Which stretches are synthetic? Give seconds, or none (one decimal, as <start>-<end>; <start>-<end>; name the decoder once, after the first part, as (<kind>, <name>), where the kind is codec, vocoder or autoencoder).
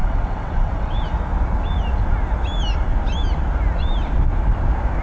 0.0-1.0 (vocoder, WaveNeXt)